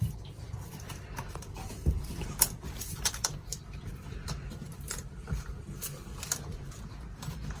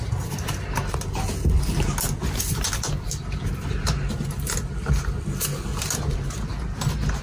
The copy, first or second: first